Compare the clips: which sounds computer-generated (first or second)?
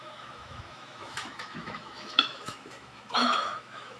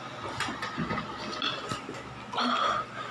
first